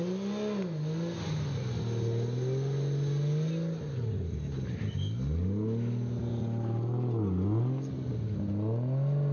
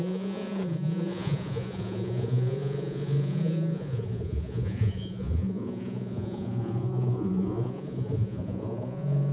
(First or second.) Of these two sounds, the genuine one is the first